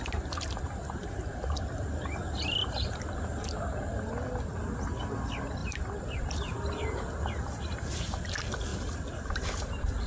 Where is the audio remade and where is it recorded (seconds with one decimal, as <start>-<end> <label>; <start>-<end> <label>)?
0.0-1.3 recorded; 1.3-2.9 remade; 2.9-5.6 recorded; 5.6-6.5 remade; 6.5-10.1 recorded